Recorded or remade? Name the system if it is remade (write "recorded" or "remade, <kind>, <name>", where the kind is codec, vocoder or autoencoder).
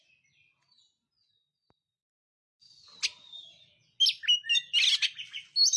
recorded